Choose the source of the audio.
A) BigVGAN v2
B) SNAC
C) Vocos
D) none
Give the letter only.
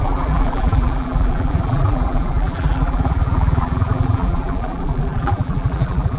A